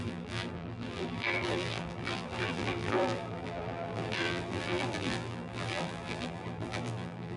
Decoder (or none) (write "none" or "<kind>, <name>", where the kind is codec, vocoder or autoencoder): vocoder, BigVGAN v2